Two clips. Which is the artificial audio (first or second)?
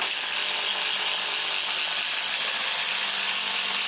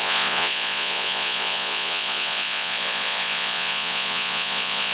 second